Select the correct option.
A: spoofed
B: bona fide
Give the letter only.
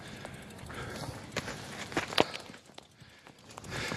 B